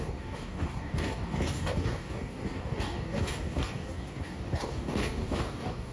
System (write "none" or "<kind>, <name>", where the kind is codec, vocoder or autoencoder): codec, DAC